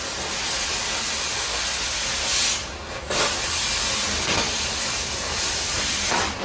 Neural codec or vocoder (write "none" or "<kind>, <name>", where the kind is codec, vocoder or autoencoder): none